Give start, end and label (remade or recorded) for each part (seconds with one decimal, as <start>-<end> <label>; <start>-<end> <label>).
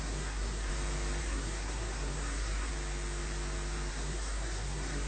0.0-0.7 remade; 0.7-1.2 recorded; 1.2-2.7 remade; 2.7-3.9 recorded; 3.9-5.1 remade